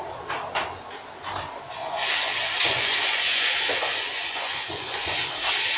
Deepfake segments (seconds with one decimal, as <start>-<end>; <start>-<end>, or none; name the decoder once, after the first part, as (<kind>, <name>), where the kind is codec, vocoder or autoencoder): 1.8-5.3 (vocoder, Vocos)